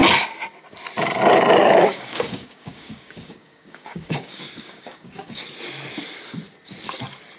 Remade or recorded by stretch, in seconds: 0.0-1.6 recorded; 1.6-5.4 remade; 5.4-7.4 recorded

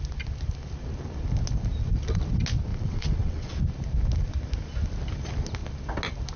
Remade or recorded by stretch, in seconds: 0.0-2.7 recorded; 2.7-3.5 remade; 3.5-6.4 recorded

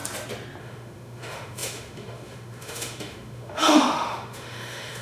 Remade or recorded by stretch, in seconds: 0.0-0.6 recorded; 0.6-5.0 remade

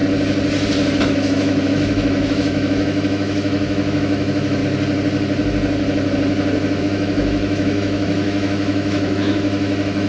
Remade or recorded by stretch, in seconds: 0.0-1.0 recorded; 1.0-4.6 remade; 4.6-6.8 recorded; 6.8-10.1 remade